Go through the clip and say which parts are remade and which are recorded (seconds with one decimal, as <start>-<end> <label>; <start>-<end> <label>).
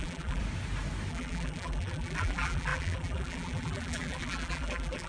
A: 0.0-0.4 remade; 0.4-1.1 recorded; 1.1-5.1 remade